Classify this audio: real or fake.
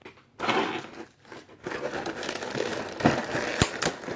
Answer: real